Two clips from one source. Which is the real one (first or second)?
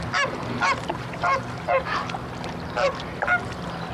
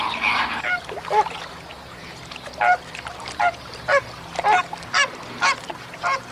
first